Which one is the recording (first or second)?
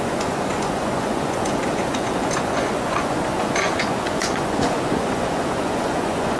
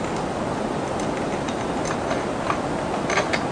second